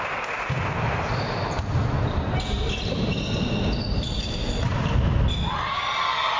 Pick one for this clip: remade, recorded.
recorded